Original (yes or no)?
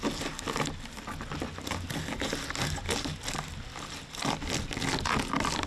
yes